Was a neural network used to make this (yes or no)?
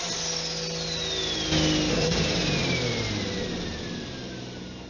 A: no